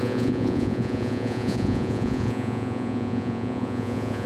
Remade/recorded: remade